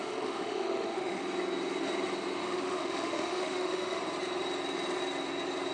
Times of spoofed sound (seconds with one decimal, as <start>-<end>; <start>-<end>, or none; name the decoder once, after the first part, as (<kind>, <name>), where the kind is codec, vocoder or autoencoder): 0.0-1.2 (autoencoder, DAC-VAE); 2.4-4.0